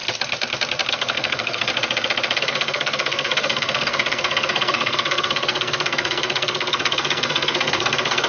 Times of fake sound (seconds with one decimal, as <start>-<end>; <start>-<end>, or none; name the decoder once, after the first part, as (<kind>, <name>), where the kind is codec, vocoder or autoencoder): 0.9-1.7 (codec, SNAC); 2.4-8.3